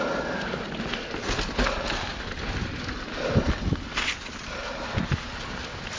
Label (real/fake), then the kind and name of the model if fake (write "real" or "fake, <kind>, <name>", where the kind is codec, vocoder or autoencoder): real